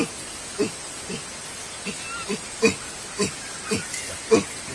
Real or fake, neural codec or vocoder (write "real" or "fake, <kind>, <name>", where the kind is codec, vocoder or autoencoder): real